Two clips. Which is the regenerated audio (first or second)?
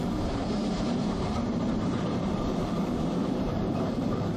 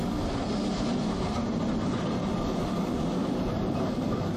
first